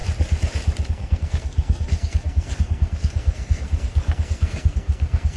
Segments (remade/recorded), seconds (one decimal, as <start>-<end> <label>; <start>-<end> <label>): 0.0-0.9 recorded; 0.9-5.4 remade